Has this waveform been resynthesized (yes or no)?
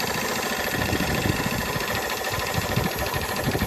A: yes